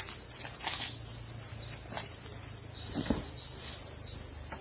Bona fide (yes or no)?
yes